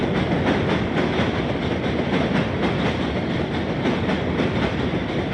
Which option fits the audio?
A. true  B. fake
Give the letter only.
A